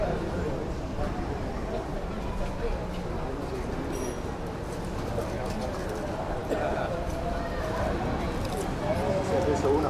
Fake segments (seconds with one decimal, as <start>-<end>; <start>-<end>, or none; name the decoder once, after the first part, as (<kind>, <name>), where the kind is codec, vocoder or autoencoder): none